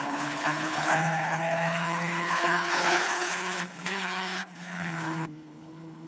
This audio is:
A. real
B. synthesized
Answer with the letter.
B